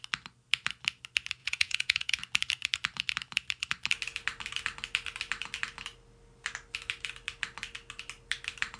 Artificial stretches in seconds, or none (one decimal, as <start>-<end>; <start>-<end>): 1.4-2.2